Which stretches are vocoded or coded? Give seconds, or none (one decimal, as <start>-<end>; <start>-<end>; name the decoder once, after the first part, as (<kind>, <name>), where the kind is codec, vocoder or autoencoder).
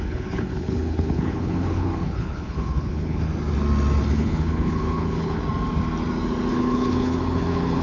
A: 0.0-3.3 (codec, HILCodec); 4.1-5.4; 6.5-7.8